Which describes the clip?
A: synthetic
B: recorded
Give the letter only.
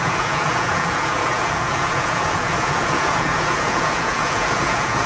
A